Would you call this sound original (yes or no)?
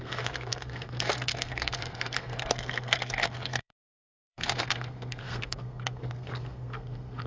no